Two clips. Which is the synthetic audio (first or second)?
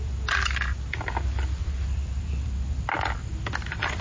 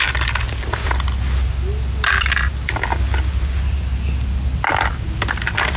first